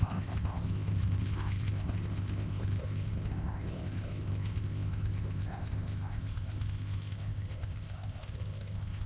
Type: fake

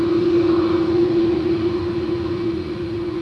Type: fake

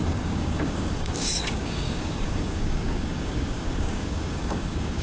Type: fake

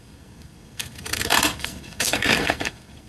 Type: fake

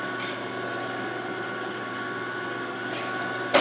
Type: real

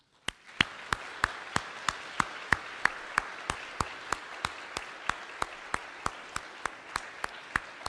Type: real